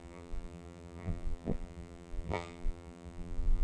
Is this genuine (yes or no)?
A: no